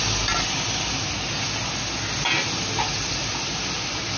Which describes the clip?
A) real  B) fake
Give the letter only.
A